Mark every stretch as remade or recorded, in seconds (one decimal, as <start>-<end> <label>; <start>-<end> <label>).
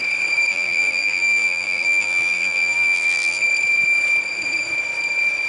0.0-0.5 recorded; 0.5-3.4 remade; 3.4-5.5 recorded